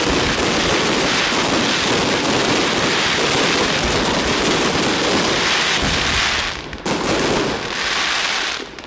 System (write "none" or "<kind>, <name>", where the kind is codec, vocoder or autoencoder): none